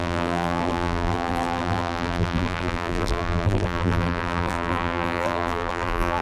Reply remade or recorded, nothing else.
remade